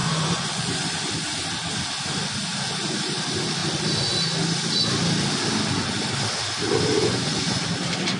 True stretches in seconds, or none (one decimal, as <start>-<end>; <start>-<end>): 0.9-7.0; 7.6-8.2